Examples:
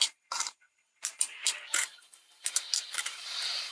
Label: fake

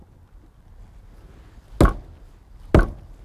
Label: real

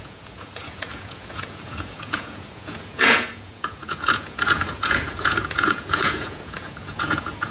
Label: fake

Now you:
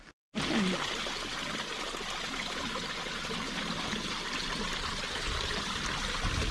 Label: real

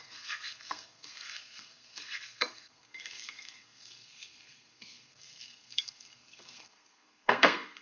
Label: fake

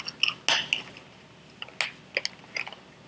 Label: real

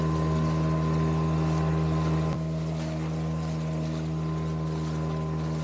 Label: real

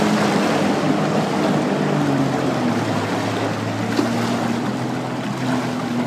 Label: real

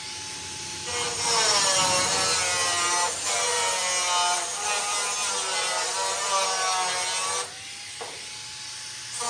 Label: real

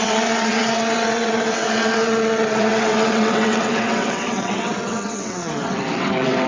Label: fake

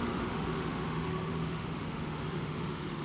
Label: fake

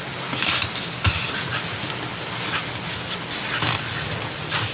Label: real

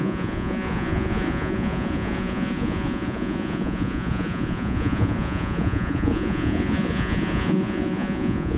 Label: fake